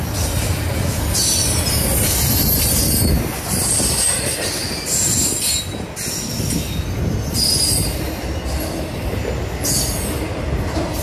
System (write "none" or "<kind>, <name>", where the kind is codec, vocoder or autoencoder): none